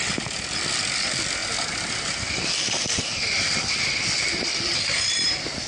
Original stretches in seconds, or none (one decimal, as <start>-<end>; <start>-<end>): 0.0-5.7